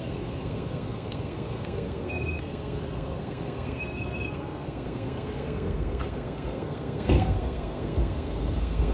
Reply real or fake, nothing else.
fake